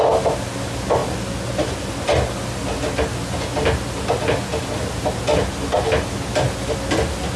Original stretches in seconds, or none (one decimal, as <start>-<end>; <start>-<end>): 0.0-7.4